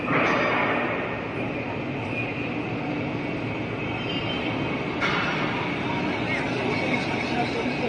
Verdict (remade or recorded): recorded